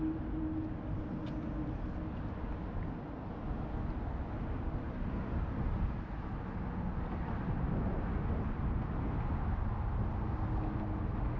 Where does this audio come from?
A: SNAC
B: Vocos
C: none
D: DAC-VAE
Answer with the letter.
C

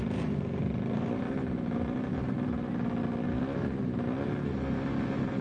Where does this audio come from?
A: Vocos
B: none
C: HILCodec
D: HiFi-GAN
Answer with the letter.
B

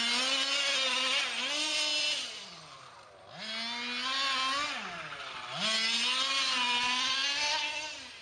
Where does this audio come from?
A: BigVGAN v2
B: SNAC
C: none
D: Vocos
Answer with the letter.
C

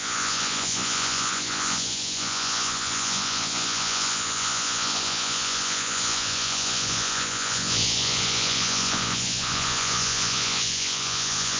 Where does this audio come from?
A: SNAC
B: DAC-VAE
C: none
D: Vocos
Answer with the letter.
D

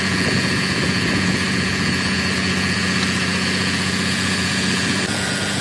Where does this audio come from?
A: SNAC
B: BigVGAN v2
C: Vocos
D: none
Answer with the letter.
C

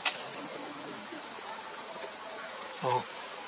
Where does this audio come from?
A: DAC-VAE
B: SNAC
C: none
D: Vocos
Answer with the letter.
D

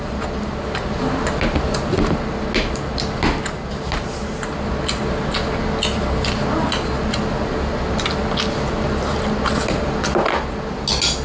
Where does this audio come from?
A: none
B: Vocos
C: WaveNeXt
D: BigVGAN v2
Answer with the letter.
A